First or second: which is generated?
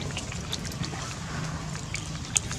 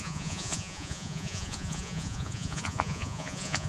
second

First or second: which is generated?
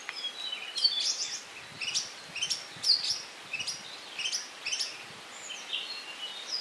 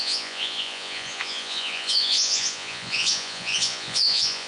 second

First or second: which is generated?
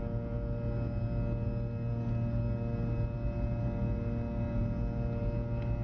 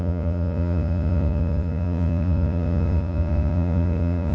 second